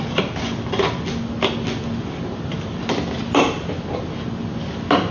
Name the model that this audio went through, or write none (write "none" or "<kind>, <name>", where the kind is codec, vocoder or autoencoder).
none